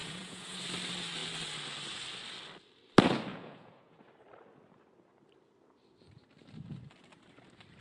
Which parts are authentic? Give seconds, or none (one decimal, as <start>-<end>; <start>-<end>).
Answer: 0.6-3.3; 4.0-7.8